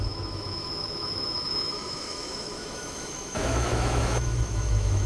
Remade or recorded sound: remade